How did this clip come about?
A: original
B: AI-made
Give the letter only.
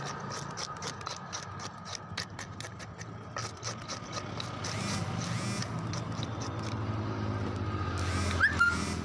A